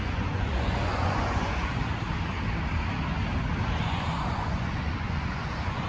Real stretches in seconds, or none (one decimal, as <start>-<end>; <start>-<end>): 1.8-3.8